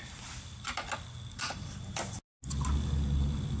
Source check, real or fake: real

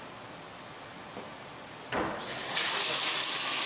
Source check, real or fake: real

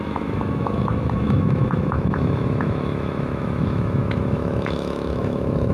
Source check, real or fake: fake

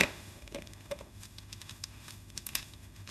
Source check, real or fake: fake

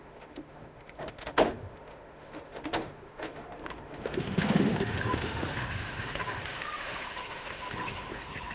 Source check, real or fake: fake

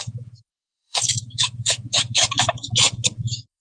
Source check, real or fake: fake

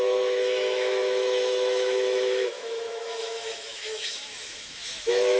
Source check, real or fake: fake